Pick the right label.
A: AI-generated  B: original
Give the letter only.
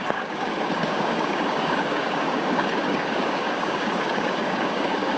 A